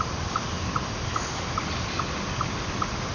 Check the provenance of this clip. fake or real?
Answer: real